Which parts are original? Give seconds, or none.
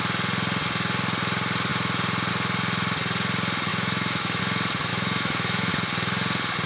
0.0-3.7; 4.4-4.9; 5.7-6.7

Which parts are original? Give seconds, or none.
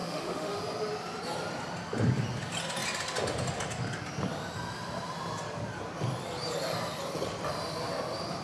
0.6-8.4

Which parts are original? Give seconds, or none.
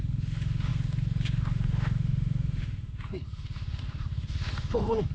none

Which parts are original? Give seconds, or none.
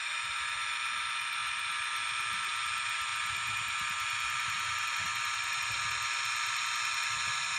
0.0-7.6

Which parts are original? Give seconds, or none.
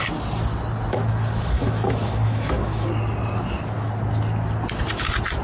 0.0-1.0; 2.9-5.4